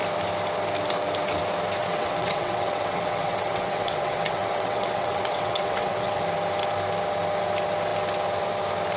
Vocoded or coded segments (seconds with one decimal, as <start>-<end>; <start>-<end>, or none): 1.8-6.2